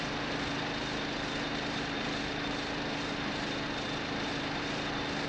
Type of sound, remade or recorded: recorded